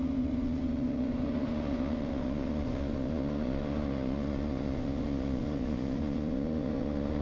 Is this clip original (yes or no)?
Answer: no